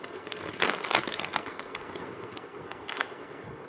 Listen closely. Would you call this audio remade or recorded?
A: remade